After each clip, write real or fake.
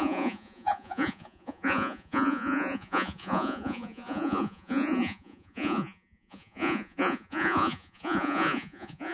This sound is fake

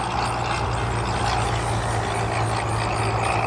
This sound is real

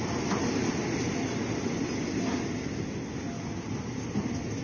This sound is real